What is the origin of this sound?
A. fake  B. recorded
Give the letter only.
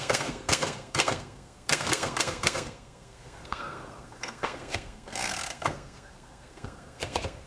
A